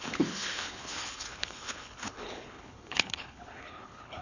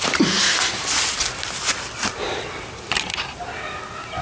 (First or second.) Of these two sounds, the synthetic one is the first